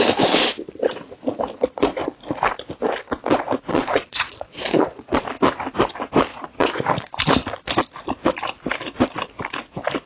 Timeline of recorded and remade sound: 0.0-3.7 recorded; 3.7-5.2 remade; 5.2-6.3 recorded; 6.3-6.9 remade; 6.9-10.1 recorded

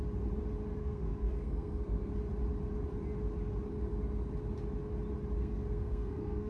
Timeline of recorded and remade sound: 0.0-0.8 recorded; 0.8-2.1 remade; 2.1-5.4 recorded; 5.4-6.5 remade